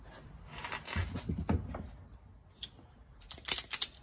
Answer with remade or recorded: recorded